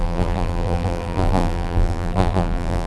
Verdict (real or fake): fake